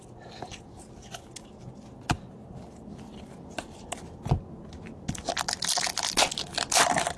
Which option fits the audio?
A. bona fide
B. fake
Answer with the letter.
A